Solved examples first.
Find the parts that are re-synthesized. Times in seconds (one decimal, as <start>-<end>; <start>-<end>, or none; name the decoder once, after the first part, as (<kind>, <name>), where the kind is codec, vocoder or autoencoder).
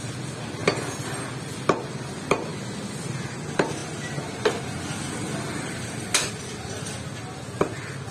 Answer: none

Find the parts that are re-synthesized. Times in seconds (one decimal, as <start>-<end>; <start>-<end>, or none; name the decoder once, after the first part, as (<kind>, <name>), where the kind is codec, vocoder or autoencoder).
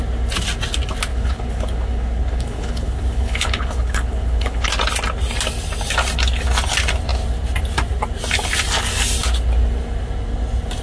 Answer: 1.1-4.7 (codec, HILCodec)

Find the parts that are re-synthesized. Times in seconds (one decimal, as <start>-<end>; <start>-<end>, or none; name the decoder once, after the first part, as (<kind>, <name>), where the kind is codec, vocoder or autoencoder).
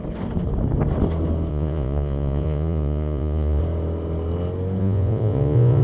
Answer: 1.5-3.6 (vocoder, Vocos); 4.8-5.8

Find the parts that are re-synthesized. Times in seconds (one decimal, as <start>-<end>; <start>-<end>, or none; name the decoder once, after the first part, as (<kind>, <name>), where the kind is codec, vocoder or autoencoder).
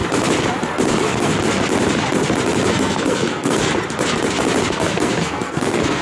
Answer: 0.9-1.3 (codec, SNAC); 2.7-3.7; 4.7-6.0